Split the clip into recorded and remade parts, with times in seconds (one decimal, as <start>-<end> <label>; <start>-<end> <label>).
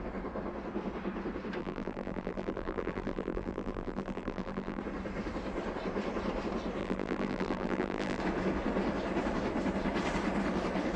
0.0-1.6 recorded; 1.6-4.8 remade; 4.8-6.8 recorded; 6.8-8.2 remade; 8.2-11.0 recorded